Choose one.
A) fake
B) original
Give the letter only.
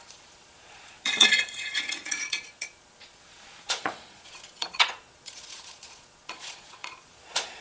A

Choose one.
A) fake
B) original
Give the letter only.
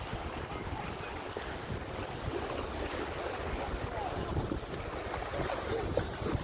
B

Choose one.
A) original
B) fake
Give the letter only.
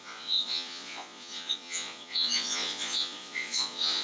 B